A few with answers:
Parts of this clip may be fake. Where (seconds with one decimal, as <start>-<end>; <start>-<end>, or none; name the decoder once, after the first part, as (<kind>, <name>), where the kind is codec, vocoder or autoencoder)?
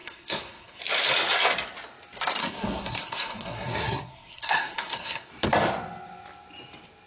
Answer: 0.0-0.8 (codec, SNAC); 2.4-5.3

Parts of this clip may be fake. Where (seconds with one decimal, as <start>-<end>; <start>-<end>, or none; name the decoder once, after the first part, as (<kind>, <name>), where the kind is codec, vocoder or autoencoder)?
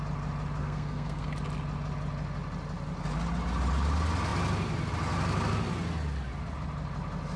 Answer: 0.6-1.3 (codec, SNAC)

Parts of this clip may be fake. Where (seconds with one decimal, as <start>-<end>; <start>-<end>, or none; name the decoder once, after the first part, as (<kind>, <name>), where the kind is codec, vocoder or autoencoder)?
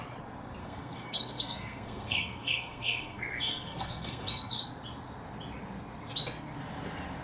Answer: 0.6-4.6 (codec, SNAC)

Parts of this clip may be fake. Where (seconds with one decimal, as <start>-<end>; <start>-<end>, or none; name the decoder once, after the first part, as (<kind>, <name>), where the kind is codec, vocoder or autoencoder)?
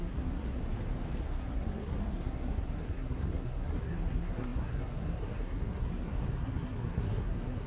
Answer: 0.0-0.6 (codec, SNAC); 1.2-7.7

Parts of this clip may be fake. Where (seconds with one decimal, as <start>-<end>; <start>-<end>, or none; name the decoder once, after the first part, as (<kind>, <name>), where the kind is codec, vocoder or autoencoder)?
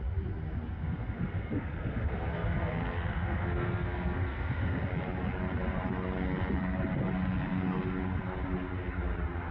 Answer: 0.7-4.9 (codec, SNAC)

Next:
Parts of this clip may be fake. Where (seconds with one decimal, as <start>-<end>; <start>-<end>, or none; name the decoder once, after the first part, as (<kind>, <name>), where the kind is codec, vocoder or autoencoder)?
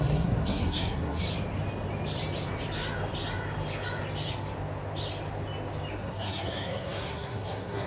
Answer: 0.0-1.2 (codec, SNAC); 5.9-7.9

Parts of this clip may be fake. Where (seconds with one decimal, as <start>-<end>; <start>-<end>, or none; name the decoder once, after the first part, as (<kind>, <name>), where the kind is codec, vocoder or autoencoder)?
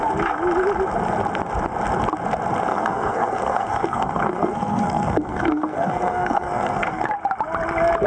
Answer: 2.7-7.1 (codec, SNAC)